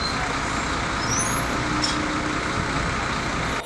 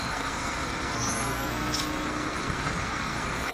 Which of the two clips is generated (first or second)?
second